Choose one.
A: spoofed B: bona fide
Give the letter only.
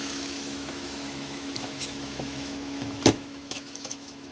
A